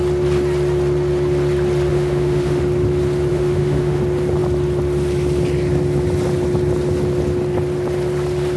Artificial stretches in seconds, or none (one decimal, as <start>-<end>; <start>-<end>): 1.9-2.6; 3.3-4.0

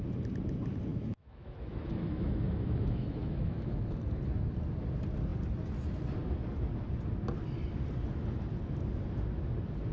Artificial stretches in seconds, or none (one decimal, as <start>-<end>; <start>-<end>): 0.9-4.0

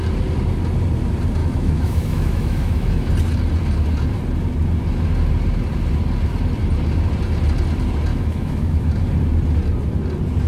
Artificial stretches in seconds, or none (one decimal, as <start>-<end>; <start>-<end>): 1.4-3.1; 8.1-8.9

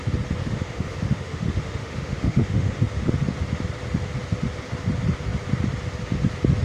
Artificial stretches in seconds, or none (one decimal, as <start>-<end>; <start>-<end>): 0.4-2.8

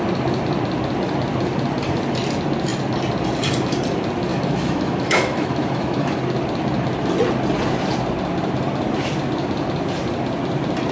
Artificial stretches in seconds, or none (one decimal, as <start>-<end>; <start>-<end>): 4.3-6.2

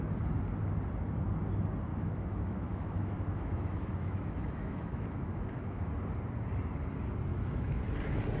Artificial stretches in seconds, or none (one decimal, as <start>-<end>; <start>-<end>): 1.9-5.9; 7.3-7.8

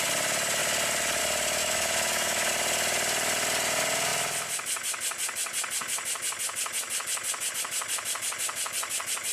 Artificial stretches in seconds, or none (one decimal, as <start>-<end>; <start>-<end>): 1.6-2.5